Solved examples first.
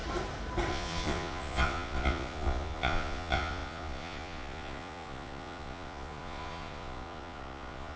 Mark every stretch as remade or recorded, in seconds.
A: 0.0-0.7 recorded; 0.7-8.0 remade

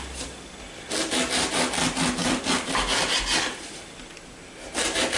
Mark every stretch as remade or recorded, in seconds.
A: 0.0-5.2 recorded

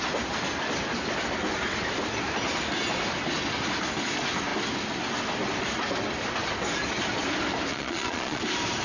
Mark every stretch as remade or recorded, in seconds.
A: 0.0-7.7 recorded; 7.7-8.4 remade; 8.4-8.8 recorded

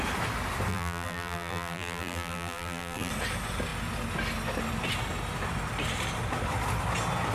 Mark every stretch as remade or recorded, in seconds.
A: 0.0-0.7 recorded; 0.7-3.1 remade; 3.1-7.3 recorded

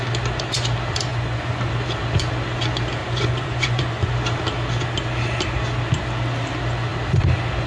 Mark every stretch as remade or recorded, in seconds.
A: 0.0-1.1 recorded; 1.1-1.7 remade; 1.7-3.0 recorded; 3.0-4.1 remade; 4.1-7.7 recorded